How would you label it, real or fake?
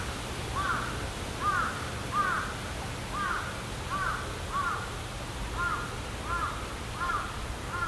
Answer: real